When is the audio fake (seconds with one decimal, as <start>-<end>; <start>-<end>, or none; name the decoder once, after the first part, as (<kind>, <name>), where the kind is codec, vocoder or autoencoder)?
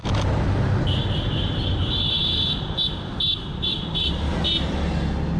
none